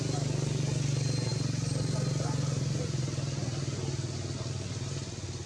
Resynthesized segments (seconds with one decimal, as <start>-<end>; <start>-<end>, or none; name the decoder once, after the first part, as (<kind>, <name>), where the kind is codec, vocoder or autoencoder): none